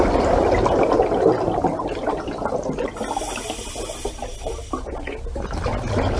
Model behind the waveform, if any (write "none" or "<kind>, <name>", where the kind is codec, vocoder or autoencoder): none